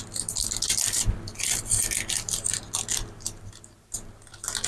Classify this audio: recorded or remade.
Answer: recorded